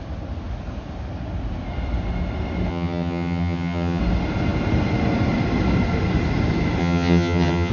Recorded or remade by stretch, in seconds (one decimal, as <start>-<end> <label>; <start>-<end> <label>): 0.0-2.7 recorded; 2.7-4.0 remade; 4.0-6.8 recorded; 6.8-7.7 remade